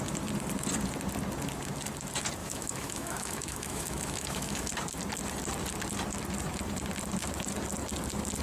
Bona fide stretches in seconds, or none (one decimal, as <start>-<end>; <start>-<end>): 0.0-2.4; 4.7-8.4